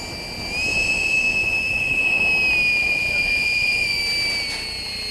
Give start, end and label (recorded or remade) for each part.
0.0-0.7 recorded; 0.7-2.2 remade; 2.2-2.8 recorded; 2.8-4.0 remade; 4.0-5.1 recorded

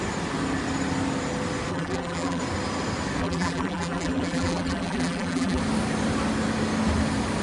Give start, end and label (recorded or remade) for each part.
0.0-1.7 recorded; 1.7-2.4 remade; 2.4-3.2 recorded; 3.2-5.6 remade; 5.6-7.4 recorded